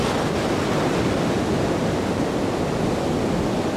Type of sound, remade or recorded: recorded